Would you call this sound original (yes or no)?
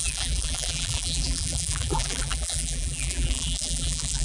no